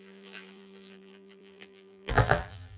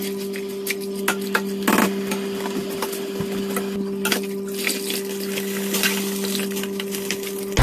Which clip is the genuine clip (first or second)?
second